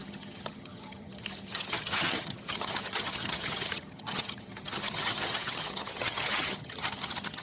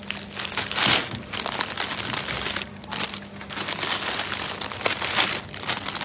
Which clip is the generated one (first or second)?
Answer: first